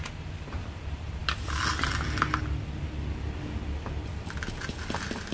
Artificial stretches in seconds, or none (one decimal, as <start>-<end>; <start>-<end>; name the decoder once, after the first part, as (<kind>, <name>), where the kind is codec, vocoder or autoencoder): none